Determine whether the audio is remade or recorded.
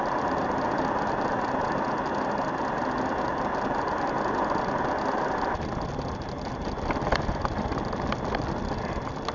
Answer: recorded